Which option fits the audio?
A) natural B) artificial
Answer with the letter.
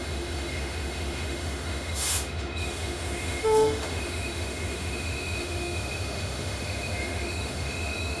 B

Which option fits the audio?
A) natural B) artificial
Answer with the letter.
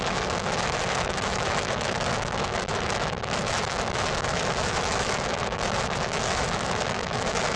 B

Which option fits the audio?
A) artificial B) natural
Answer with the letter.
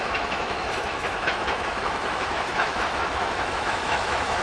A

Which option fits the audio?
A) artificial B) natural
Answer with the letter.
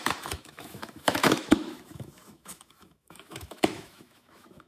A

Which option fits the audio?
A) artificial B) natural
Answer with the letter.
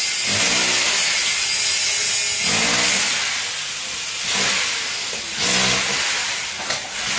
B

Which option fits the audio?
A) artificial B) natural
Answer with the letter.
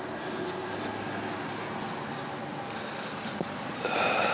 B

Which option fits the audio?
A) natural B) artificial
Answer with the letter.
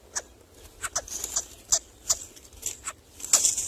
A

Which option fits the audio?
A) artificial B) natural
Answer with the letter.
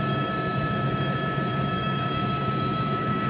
A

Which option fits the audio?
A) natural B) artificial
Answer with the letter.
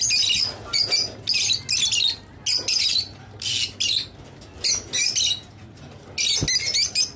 A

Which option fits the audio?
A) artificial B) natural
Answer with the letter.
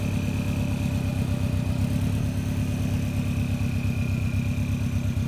B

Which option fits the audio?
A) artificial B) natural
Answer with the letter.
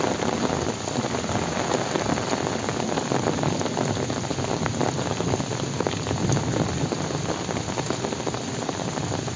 B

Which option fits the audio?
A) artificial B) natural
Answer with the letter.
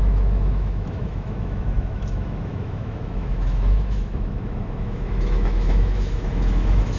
A